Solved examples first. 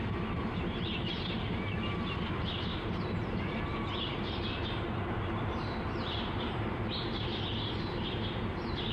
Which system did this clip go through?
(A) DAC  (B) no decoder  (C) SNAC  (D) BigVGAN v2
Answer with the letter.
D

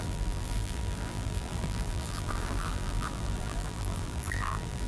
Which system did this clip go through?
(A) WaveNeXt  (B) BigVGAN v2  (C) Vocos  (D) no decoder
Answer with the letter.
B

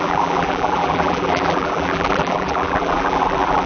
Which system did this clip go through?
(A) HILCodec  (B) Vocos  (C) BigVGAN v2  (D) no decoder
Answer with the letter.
C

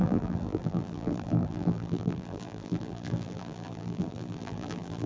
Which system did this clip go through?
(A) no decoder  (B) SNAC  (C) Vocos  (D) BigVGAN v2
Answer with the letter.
D